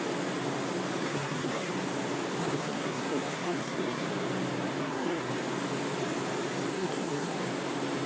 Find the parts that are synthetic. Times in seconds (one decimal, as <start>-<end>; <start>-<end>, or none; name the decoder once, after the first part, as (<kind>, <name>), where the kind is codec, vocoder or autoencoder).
1.0-1.7 (codec, SNAC); 2.4-4.1; 4.8-5.3; 6.7-7.4